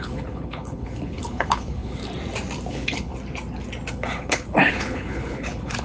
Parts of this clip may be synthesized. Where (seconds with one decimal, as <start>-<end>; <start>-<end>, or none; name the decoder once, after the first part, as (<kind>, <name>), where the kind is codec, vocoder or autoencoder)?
0.0-2.0 (codec, HILCodec); 2.7-3.1; 3.9-5.8